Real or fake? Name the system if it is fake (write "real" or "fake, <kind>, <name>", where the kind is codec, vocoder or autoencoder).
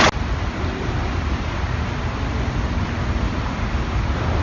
real